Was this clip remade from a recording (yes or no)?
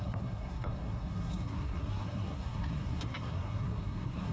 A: yes